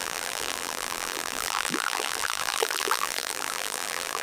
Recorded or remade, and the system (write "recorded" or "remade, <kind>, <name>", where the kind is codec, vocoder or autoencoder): remade, vocoder, BigVGAN v2